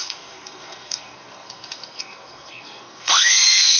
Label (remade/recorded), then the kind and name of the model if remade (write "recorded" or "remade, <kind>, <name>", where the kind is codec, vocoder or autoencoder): remade, codec, SNAC